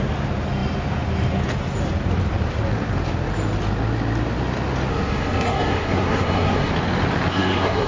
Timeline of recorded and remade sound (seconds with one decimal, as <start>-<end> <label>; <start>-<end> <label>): 0.0-4.9 recorded; 4.9-6.7 remade; 6.7-7.3 recorded; 7.3-7.9 remade